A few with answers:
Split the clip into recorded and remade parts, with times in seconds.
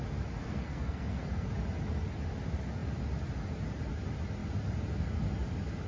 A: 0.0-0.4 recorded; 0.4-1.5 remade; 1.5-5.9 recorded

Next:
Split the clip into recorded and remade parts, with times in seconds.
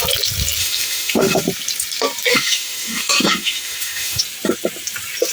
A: 0.0-0.6 recorded; 0.6-1.4 remade; 1.4-2.3 recorded; 2.3-4.2 remade; 4.2-5.3 recorded